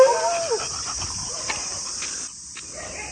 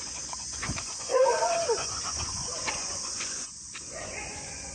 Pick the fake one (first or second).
second